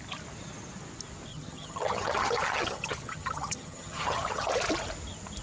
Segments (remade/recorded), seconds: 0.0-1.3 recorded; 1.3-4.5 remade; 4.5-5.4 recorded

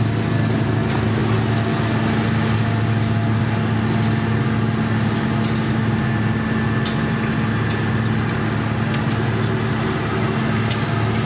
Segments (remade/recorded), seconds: 0.0-11.3 recorded

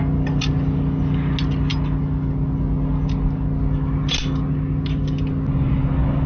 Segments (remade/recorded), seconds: 0.0-6.3 recorded

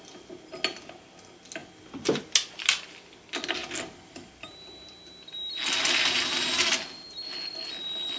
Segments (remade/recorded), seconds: 0.0-8.2 recorded

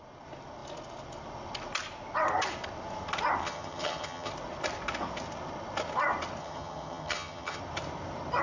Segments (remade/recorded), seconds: 0.0-3.4 recorded; 3.4-4.3 remade; 4.3-6.4 recorded; 6.4-7.6 remade; 7.6-8.4 recorded

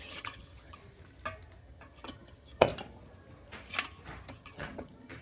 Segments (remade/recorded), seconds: 0.0-0.8 remade; 0.8-1.6 recorded; 1.6-2.7 remade; 2.7-4.3 recorded; 4.3-5.2 remade

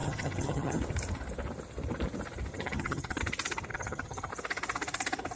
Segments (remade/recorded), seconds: 0.0-0.8 remade; 0.8-2.5 recorded; 2.5-3.2 remade; 3.2-3.7 recorded; 3.7-4.3 remade; 4.3-5.4 recorded